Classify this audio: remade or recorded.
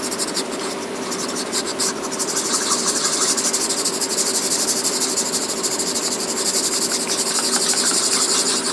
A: recorded